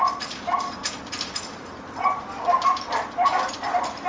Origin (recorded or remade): remade